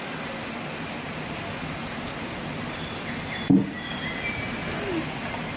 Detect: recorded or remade recorded